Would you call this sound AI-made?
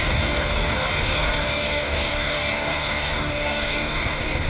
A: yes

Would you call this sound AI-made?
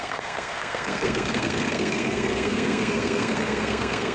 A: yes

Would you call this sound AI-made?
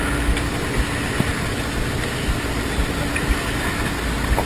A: no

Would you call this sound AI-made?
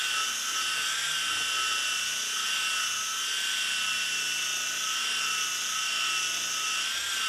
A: no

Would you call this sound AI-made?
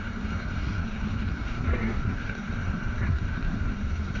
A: yes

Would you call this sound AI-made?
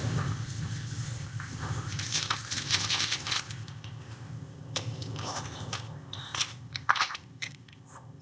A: yes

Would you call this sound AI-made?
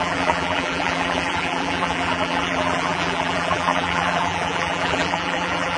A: yes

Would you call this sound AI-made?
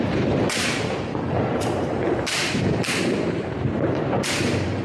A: yes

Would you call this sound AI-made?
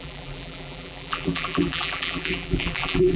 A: yes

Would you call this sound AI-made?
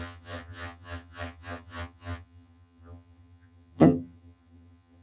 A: yes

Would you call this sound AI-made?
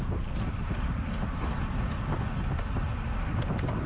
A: no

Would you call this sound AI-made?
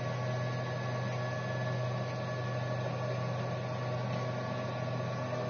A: no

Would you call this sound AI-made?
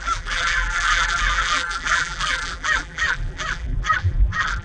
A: yes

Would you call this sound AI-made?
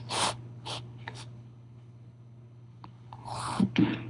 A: yes